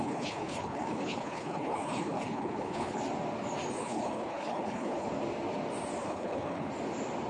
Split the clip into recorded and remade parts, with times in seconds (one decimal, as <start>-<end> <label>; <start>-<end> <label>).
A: 0.0-3.0 remade; 3.0-3.8 recorded; 3.8-5.1 remade; 5.1-6.0 recorded; 6.0-6.7 remade; 6.7-7.3 recorded